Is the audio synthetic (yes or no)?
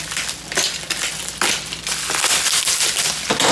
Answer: no